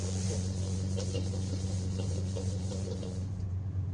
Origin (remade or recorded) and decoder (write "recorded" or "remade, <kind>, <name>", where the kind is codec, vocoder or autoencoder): remade, vocoder, Vocos